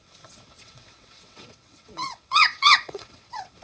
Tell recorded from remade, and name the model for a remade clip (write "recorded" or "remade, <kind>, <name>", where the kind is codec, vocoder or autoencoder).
remade, vocoder, WaveNeXt